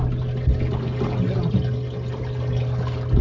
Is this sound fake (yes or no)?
no